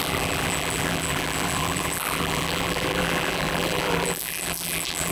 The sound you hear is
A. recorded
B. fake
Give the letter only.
B